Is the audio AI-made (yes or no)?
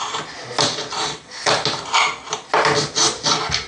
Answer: no